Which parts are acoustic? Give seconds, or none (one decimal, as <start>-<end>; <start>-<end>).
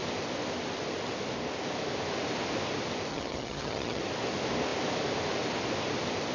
0.0-3.1; 4.0-6.3